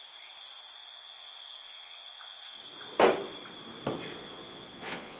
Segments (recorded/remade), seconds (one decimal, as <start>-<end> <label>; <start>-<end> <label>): 0.0-0.8 recorded; 0.8-2.6 remade; 2.6-4.2 recorded; 4.2-5.2 remade